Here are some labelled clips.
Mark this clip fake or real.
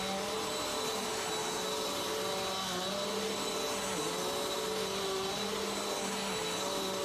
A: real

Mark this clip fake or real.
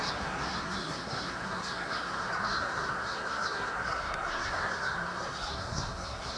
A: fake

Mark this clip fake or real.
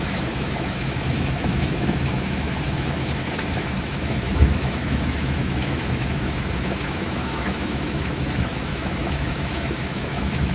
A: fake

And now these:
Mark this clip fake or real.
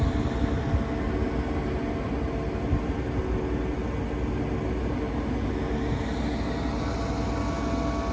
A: real